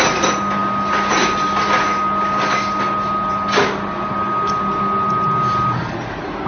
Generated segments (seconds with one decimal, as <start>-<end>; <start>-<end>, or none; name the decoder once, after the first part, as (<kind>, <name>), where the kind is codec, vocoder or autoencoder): none